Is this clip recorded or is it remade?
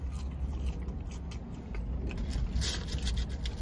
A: recorded